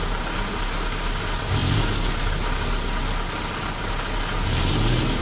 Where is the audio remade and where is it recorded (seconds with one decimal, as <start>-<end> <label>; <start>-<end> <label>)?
0.0-1.6 recorded; 1.6-2.2 remade; 2.2-5.2 recorded